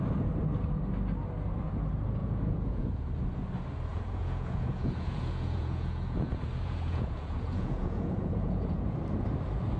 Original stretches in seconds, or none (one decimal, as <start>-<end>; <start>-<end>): 0.0-2.2; 3.1-3.9; 9.0-9.8